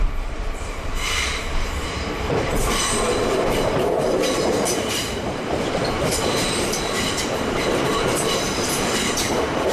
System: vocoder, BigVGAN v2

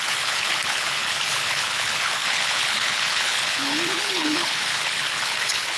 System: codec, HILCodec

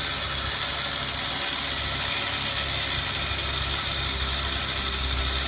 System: none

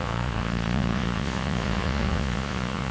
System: vocoder, Vocos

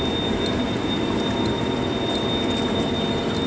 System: none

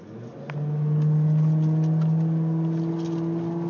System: none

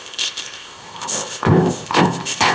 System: codec, ZipCodec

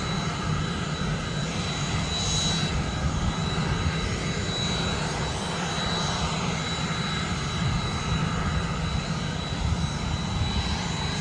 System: none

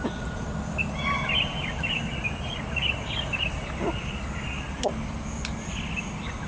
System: none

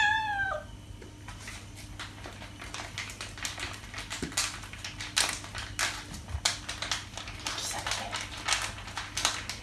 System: none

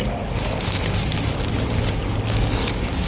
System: codec, DAC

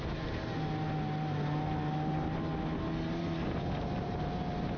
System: none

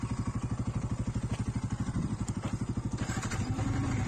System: vocoder, BigVGAN v2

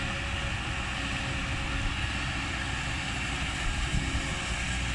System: none